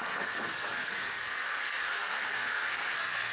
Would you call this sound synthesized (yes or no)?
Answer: yes